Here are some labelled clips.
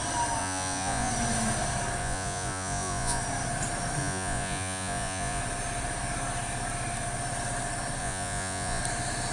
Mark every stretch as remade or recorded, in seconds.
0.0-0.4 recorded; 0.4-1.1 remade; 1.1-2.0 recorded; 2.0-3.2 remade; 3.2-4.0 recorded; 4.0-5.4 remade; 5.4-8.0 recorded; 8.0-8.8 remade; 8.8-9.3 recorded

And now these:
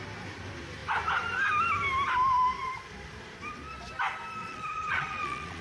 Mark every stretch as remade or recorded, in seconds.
0.0-4.4 recorded; 4.4-5.6 remade

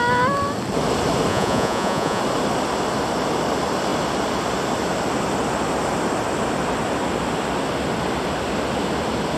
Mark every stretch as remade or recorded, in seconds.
0.0-1.3 recorded; 1.3-2.2 remade; 2.2-9.4 recorded

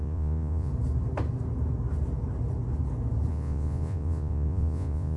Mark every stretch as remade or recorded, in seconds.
0.0-0.7 remade; 0.7-3.3 recorded; 3.3-5.2 remade

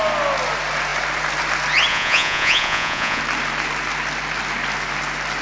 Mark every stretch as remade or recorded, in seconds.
0.0-1.9 recorded; 1.9-3.2 remade; 3.2-5.4 recorded

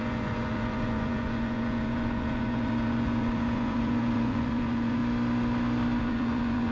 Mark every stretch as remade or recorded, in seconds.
0.0-5.0 remade; 5.0-6.0 recorded; 6.0-6.7 remade

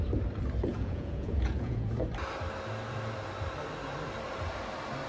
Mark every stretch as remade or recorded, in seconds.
0.0-0.7 recorded; 0.7-1.9 remade; 1.9-5.1 recorded